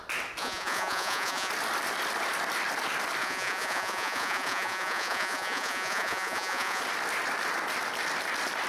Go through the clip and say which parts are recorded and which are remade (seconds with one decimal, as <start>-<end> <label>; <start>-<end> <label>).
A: 0.0-0.4 recorded; 0.4-1.5 remade; 1.5-3.2 recorded; 3.2-6.8 remade; 6.8-8.7 recorded